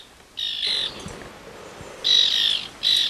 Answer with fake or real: real